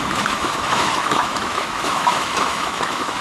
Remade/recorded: remade